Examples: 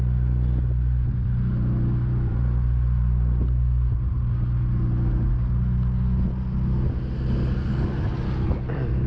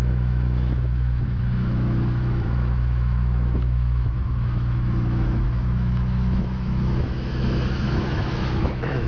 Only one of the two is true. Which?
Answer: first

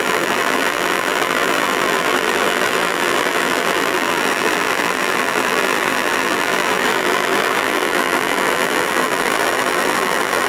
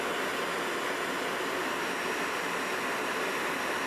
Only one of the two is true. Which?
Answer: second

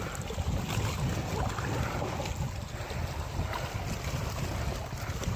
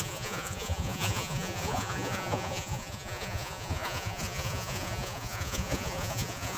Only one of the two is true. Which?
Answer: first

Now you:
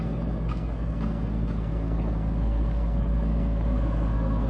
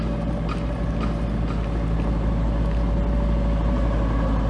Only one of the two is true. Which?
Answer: second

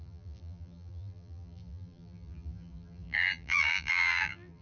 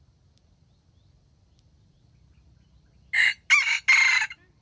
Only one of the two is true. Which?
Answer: second